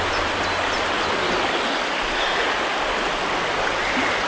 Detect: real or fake real